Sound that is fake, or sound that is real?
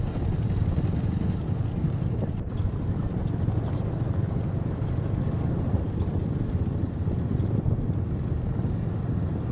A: real